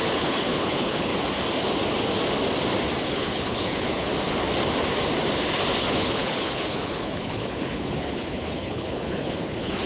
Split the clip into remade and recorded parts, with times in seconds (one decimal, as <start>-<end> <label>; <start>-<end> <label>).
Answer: 0.0-1.1 remade; 1.1-3.0 recorded; 3.0-4.1 remade; 4.1-5.8 recorded; 5.8-9.9 remade